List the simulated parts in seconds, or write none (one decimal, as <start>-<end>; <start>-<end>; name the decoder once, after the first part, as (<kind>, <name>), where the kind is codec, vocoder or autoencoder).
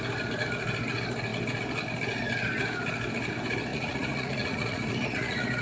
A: 3.7-5.6 (vocoder, Vocos)